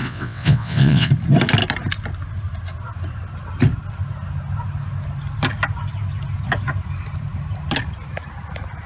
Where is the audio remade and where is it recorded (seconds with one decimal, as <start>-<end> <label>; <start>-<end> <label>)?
0.0-1.1 remade; 1.1-8.9 recorded